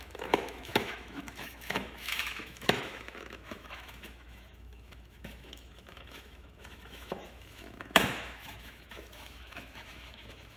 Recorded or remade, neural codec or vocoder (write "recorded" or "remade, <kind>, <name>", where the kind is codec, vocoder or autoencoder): remade, autoencoder, DAC-VAE